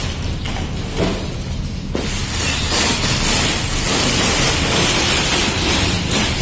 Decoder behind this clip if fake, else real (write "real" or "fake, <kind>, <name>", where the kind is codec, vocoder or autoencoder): real